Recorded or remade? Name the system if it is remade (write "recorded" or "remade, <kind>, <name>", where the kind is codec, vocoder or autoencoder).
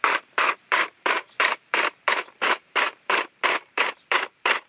remade, vocoder, BigVGAN v2